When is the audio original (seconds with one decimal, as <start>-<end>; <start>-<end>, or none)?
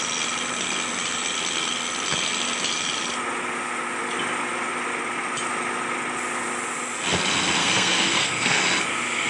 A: 0.0-7.6; 8.6-9.3